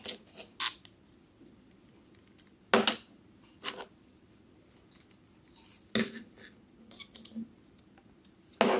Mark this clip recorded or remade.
recorded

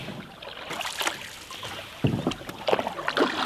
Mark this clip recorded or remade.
recorded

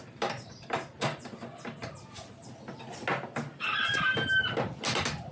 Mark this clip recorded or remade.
recorded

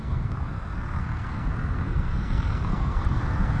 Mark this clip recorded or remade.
remade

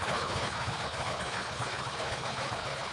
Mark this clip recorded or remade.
remade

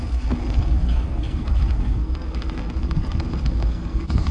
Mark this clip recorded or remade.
remade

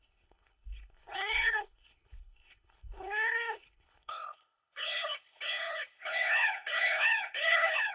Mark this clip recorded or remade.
remade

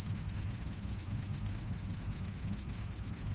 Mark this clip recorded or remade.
remade